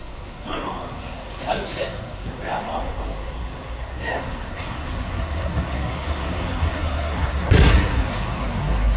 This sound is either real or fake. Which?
fake